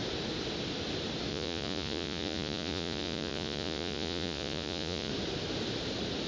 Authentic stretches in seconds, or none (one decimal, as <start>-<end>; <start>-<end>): 0.0-1.3; 5.1-6.3